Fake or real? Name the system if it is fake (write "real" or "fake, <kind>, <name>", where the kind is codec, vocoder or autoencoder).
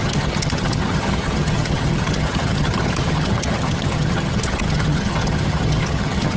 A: fake, vocoder, HiFi-GAN